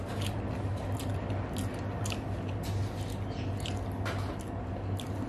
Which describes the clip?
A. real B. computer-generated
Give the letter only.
A